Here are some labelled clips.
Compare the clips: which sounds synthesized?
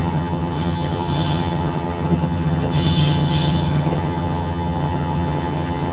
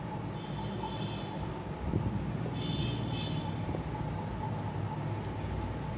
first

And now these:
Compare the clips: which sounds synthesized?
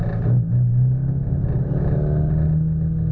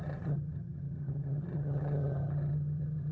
second